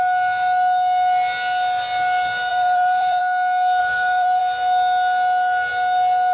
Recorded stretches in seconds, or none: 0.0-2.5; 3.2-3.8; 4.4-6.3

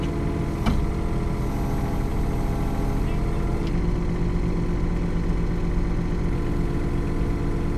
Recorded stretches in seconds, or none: 0.0-7.8

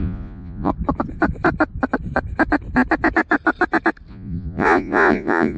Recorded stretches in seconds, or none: 0.7-4.1

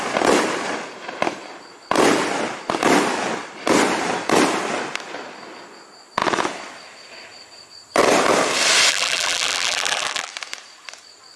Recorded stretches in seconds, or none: 0.0-8.9; 10.3-11.4

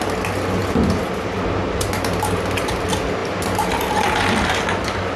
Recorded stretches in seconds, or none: 0.0-5.2

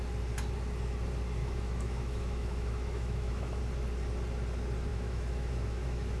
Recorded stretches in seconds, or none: 0.0-1.4; 3.6-4.9